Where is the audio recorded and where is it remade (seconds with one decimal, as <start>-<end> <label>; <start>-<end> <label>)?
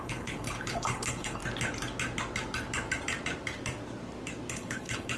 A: 0.0-1.4 remade; 1.4-4.5 recorded; 4.5-5.2 remade